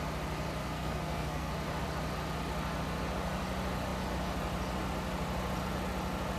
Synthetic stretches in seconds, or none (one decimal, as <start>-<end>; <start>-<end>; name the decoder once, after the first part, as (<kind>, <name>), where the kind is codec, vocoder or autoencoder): 0.6-1.5 (codec, SNAC)